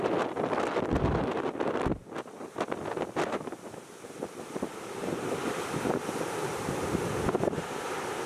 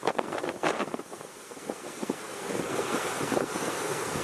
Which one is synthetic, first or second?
second